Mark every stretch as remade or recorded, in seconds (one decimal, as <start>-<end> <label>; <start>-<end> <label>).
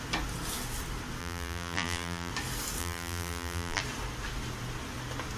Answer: 0.0-1.2 recorded; 1.2-2.3 remade; 2.3-2.8 recorded; 2.8-3.8 remade; 3.8-5.4 recorded